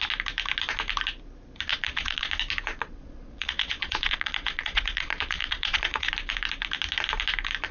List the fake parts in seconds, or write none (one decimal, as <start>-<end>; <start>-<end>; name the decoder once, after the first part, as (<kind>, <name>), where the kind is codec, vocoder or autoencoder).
1.7-2.3 (vocoder, Vocos); 2.7-6.1